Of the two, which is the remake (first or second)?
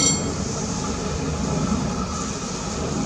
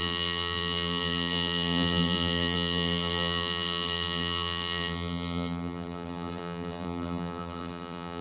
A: second